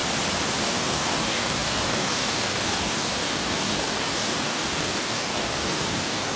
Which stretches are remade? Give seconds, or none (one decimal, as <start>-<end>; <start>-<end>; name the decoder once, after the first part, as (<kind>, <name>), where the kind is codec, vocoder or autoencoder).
0.6-6.4 (codec, DAC)